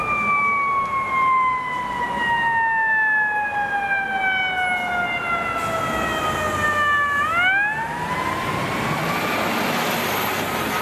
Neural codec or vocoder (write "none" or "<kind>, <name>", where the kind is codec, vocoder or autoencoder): none